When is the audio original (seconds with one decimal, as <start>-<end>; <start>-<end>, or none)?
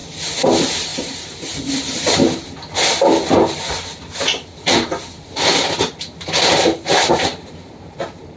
0.0-0.5; 2.2-7.1